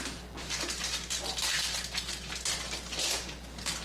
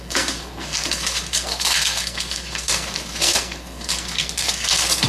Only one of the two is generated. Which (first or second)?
second